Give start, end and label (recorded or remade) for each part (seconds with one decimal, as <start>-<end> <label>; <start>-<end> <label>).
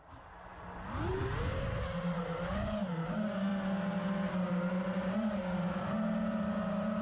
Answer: 0.0-0.5 remade; 0.5-1.1 recorded; 1.1-3.5 remade; 3.5-4.3 recorded; 4.3-7.0 remade